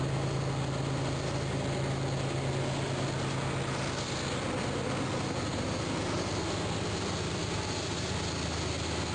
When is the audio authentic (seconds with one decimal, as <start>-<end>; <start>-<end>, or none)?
0.0-9.1